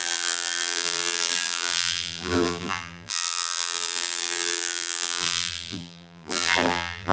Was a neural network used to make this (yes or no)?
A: yes